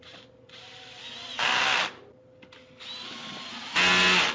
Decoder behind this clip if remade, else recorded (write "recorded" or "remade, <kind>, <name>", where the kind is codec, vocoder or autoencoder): recorded